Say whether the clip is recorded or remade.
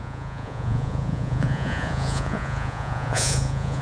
remade